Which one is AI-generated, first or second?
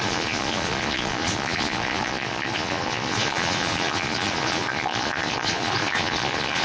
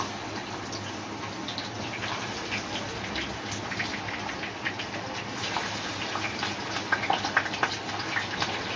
first